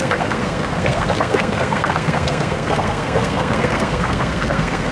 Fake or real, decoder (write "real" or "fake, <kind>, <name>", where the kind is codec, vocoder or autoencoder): fake, codec, SNAC